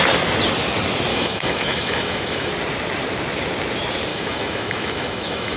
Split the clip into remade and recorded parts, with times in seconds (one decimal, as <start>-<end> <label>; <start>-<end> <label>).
0.0-1.1 recorded; 1.1-2.5 remade; 2.5-4.1 recorded; 4.1-5.6 remade